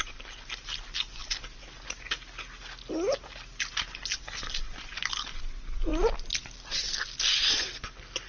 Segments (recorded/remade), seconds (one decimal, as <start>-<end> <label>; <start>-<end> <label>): 0.0-8.3 recorded